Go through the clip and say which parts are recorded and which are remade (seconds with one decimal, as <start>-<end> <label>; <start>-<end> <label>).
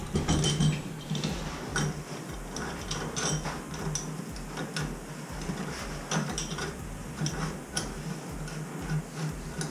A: 0.0-9.7 recorded